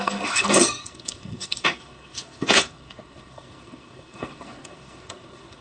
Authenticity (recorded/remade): remade